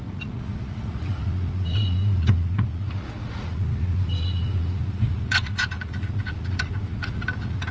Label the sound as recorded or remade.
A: remade